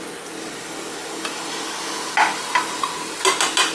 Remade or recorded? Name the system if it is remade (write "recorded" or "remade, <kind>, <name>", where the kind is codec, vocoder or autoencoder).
recorded